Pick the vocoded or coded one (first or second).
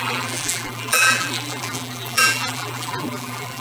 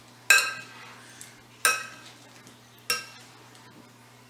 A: first